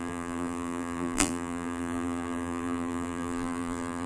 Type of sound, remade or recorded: remade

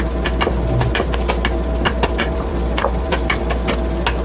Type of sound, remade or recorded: recorded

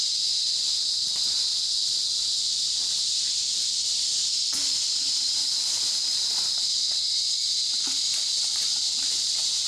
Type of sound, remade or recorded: remade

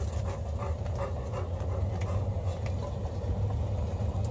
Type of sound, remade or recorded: recorded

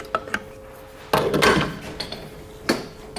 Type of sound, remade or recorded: recorded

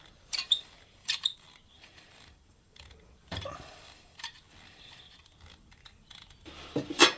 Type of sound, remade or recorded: remade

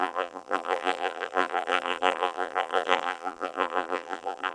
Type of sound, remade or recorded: remade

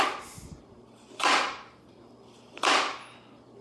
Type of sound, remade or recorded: recorded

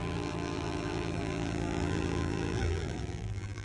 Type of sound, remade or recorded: remade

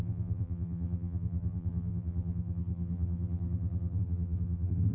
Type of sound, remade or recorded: remade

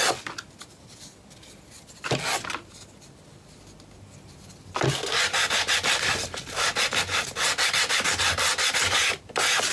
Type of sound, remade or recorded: recorded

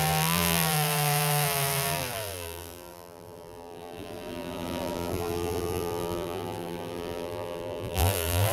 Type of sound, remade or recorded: remade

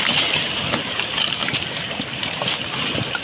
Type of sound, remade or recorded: recorded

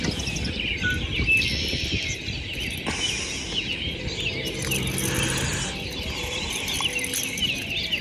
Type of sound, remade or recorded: recorded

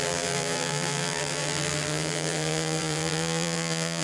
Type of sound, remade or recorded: remade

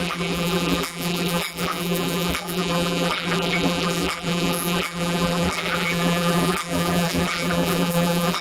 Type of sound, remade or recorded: remade